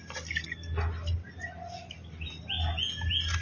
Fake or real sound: real